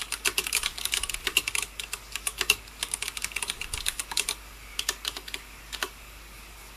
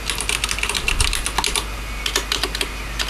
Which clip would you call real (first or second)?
second